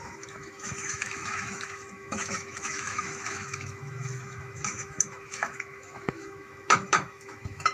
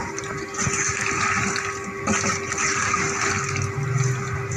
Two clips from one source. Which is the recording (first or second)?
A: second